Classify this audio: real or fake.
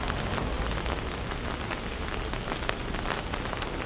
real